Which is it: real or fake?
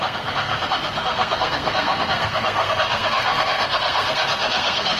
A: fake